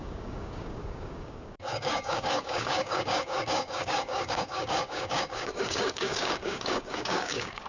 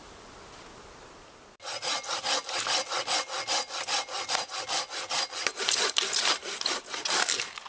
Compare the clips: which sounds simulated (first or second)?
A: first